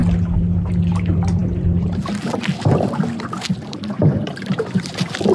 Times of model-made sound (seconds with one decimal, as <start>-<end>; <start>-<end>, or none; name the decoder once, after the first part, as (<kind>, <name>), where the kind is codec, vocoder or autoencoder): 0.0-5.3 (vocoder, BigVGAN v2)